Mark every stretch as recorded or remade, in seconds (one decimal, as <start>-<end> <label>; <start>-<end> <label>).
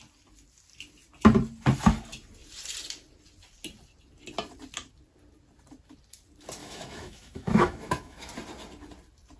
0.0-6.6 recorded; 6.6-8.3 remade; 8.3-9.4 recorded